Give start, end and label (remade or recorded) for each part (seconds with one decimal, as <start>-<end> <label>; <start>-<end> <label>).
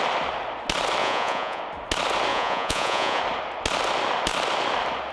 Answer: 0.0-1.0 recorded; 1.0-1.6 remade; 1.6-2.3 recorded; 2.3-3.2 remade; 3.2-5.1 recorded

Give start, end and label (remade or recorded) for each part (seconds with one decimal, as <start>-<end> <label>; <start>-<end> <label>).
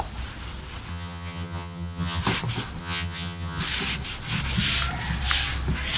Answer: 0.0-0.9 recorded; 0.9-2.2 remade; 2.2-2.8 recorded; 2.8-3.6 remade; 3.6-6.0 recorded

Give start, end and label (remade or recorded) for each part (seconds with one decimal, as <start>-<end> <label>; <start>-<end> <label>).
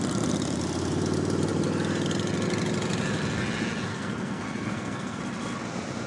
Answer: 0.0-3.9 recorded; 3.9-5.2 remade; 5.2-6.1 recorded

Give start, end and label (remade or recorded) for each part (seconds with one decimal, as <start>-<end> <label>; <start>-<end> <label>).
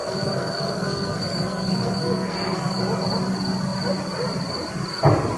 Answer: 0.0-2.8 remade; 2.8-5.4 recorded